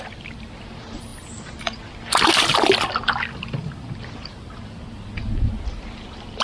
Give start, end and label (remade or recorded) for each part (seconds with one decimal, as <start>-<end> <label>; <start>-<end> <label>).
0.0-6.4 recorded